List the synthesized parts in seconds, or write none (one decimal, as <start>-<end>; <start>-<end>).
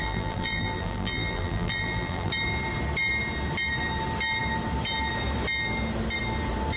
0.0-2.3